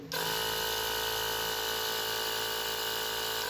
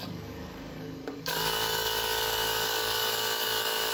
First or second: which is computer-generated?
second